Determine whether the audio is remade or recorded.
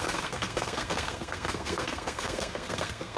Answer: remade